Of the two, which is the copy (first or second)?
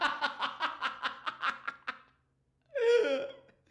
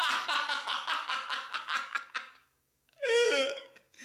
second